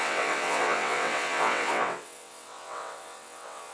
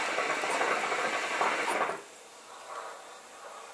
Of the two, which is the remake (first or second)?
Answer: first